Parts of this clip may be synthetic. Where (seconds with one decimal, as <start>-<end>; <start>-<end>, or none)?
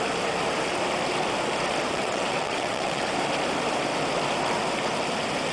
1.9-3.1